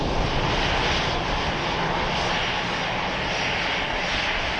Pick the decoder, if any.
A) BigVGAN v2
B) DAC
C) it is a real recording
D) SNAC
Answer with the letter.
C